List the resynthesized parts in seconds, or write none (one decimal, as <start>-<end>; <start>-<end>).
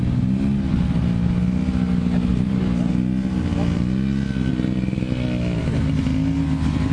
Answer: 2.3-2.9; 4.5-5.6